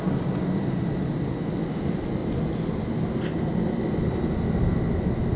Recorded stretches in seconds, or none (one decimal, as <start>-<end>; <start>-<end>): 0.0-5.4